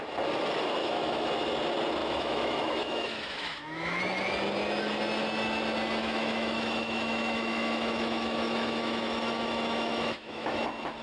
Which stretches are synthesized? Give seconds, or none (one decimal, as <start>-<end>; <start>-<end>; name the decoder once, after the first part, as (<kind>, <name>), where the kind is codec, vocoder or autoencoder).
0.8-1.3 (autoencoder, DAC-VAE); 2.0-4.0; 6.0-10.6